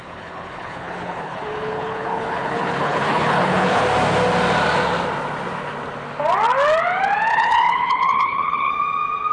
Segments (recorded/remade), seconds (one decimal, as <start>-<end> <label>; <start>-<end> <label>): 0.0-3.8 remade; 3.8-7.3 recorded; 7.3-8.7 remade; 8.7-9.3 recorded